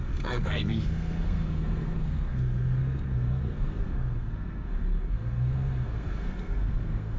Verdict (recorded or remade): remade